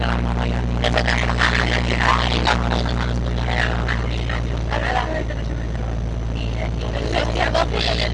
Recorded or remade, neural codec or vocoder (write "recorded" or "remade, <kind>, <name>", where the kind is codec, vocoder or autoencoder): recorded